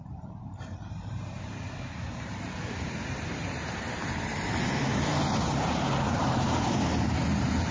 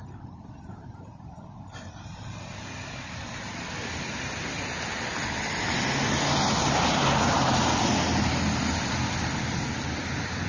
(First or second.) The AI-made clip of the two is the first